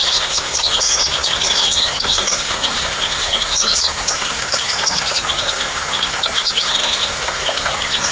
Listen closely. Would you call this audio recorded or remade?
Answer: remade